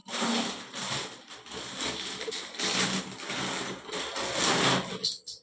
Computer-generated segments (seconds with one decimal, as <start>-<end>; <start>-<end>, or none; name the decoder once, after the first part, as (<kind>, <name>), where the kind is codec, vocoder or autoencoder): 0.0-3.0 (vocoder, BigVGAN v2)